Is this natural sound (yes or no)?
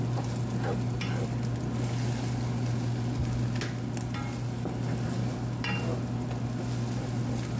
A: yes